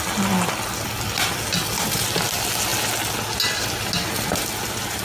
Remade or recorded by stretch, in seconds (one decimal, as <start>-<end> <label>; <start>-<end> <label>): 0.0-5.0 recorded